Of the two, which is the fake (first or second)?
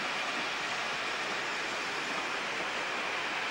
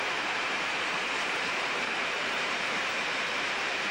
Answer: second